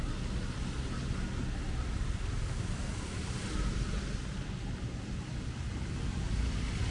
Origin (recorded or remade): recorded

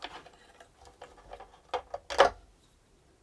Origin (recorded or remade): recorded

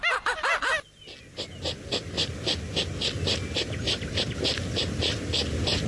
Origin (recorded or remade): recorded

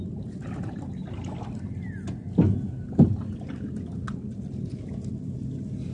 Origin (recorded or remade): recorded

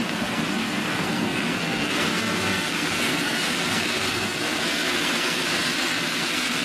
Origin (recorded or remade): remade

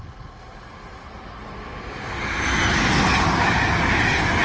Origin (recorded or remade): recorded